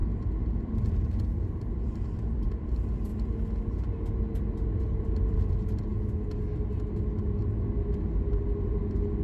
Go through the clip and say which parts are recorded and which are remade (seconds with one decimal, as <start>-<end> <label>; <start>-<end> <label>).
0.0-3.1 remade; 3.1-4.8 recorded; 4.8-5.9 remade; 5.9-8.3 recorded; 8.3-9.2 remade